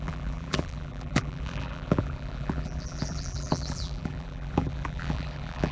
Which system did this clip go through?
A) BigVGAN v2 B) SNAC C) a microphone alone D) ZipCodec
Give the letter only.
A